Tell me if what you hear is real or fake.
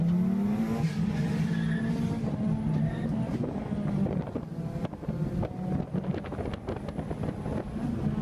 real